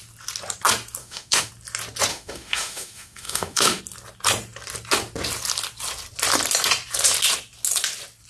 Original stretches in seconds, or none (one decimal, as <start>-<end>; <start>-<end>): 0.0-1.0; 1.5-2.1; 3.8-8.3